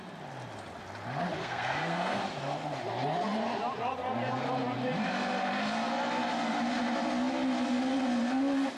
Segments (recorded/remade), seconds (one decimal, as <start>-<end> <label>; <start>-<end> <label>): 0.0-1.4 recorded; 1.4-2.2 remade; 2.2-8.8 recorded